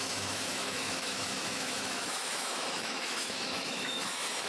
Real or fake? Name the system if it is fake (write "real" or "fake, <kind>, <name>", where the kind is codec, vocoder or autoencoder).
fake, autoencoder, DAC-VAE